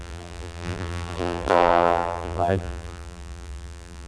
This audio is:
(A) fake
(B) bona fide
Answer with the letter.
A